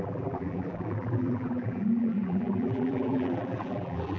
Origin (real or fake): fake